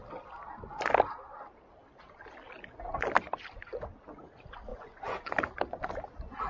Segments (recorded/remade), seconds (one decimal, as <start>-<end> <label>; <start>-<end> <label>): 0.0-4.7 recorded; 4.7-5.3 remade; 5.3-6.5 recorded